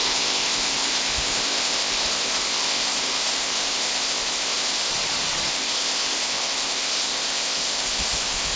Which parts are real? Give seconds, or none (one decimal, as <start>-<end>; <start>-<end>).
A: 4.9-5.5